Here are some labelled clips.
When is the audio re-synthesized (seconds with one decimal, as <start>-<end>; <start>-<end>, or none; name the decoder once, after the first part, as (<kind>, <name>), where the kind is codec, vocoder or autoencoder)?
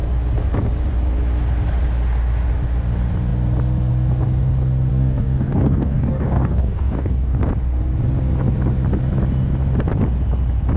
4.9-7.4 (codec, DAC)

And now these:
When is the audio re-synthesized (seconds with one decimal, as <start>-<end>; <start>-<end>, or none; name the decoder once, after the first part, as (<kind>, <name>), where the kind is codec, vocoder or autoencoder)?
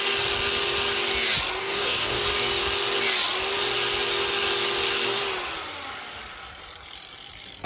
1.6-2.2 (codec, DAC)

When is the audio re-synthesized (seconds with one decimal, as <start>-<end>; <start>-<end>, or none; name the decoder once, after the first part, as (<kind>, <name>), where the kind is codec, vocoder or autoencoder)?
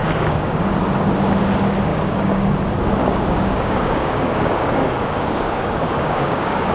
0.0-0.6 (codec, DAC); 1.9-2.5; 3.0-6.7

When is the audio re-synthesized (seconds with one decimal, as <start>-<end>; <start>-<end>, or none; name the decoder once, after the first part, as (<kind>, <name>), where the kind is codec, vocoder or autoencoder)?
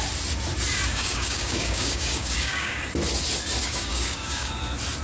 0.9-2.8 (codec, DAC); 3.6-4.5